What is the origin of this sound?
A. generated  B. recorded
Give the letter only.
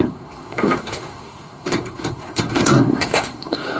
A